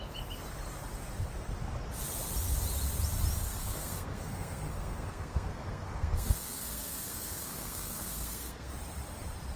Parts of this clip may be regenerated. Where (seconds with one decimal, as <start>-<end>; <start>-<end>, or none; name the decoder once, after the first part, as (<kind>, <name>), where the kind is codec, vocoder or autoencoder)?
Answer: 3.5-8.7 (codec, SNAC)